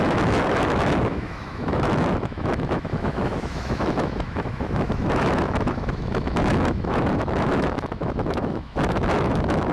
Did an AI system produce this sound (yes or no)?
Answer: yes